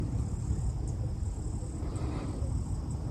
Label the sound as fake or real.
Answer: real